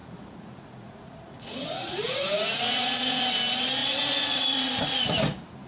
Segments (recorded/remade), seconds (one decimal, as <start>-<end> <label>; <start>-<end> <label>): 0.0-3.2 remade; 3.2-3.8 recorded; 3.8-5.0 remade; 5.0-5.7 recorded